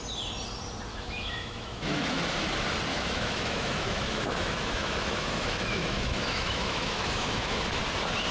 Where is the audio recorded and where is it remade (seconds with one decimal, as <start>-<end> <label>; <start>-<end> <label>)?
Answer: 0.0-0.9 recorded; 0.9-2.2 remade; 2.2-2.9 recorded; 2.9-7.8 remade; 7.8-8.3 recorded